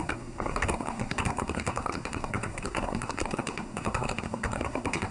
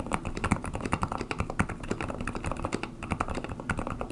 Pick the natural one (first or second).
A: second